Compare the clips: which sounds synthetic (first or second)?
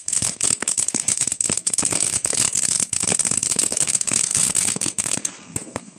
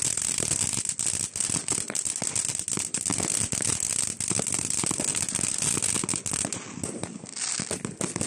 first